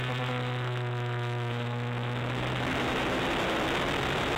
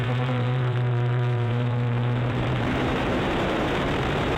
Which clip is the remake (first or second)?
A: second